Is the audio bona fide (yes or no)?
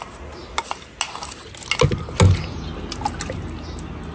yes